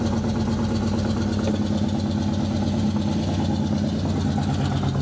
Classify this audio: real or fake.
real